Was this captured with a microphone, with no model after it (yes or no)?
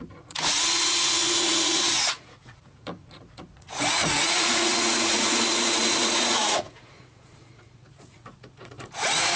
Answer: no